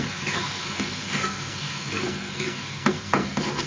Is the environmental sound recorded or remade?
remade